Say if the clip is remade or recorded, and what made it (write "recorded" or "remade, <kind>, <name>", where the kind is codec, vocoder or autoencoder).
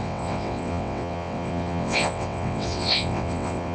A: remade, vocoder, WaveNeXt